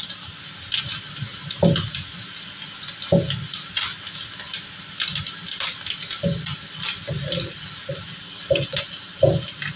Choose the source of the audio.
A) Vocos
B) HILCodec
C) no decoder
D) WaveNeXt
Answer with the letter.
C